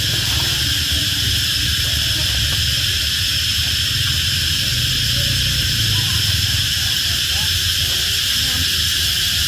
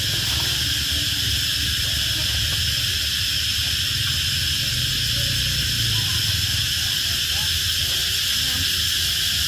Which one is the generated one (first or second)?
first